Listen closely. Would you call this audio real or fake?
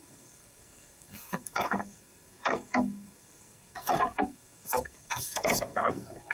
fake